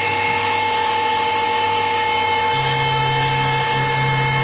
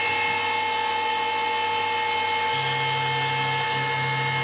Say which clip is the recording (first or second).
second